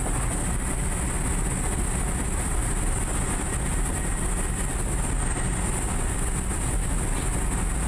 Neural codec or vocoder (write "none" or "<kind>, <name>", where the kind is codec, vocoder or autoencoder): none